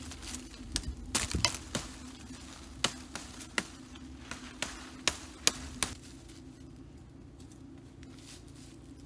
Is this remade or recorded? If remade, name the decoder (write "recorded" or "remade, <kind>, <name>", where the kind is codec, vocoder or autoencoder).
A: recorded